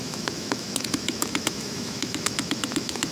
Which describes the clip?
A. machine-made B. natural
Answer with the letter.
A